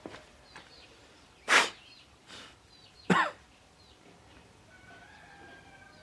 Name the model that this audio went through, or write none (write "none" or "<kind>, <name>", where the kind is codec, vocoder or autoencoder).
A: vocoder, BigVGAN v2